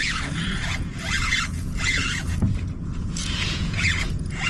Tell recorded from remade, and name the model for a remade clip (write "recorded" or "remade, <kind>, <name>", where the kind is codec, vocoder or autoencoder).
remade, vocoder, Vocos